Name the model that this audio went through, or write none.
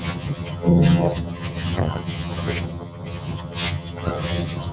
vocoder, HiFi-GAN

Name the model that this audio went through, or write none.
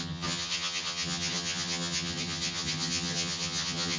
vocoder, HiFi-GAN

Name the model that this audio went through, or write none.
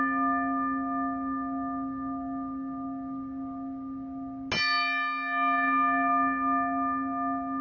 none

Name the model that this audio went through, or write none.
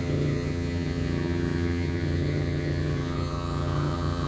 vocoder, HiFi-GAN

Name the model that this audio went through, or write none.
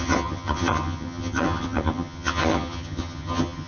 vocoder, HiFi-GAN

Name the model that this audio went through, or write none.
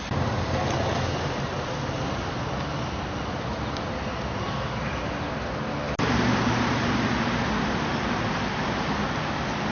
none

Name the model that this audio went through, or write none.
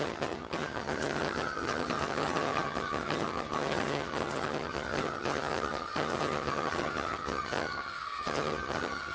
vocoder, HiFi-GAN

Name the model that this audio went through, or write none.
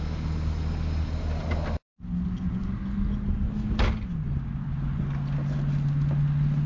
none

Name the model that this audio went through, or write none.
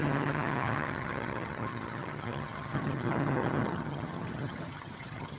vocoder, HiFi-GAN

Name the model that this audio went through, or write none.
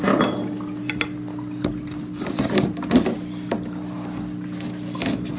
none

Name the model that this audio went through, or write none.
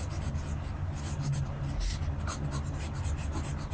none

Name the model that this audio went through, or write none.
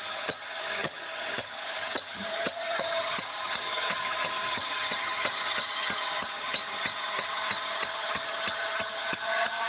vocoder, HiFi-GAN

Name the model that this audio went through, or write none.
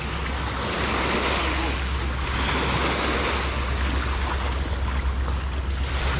none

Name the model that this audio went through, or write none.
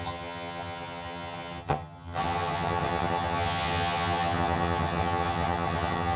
vocoder, HiFi-GAN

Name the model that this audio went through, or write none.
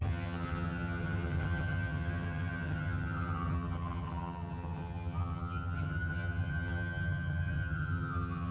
vocoder, HiFi-GAN